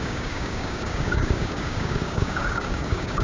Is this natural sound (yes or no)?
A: no